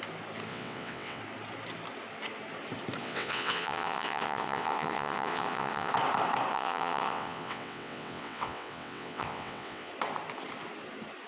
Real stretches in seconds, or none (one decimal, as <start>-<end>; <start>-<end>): 0.0-0.5; 1.2-3.0; 5.9-6.5; 9.9-11.3